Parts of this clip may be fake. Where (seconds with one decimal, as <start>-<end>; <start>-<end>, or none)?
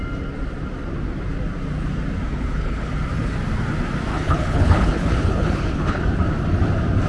2.3-2.9; 4.1-6.0